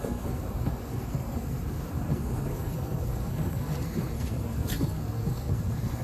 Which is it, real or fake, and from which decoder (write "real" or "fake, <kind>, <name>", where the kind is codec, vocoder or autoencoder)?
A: fake, codec, SNAC